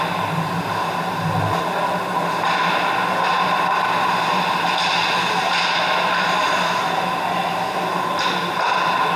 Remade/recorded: recorded